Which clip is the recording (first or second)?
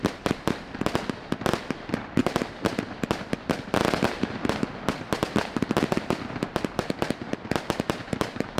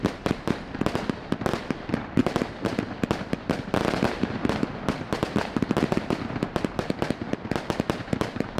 first